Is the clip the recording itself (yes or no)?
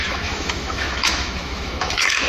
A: no